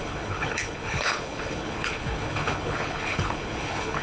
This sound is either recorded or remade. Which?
remade